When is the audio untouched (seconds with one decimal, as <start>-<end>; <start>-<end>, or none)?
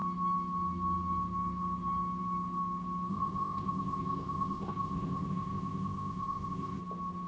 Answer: 0.0-3.1; 6.8-7.3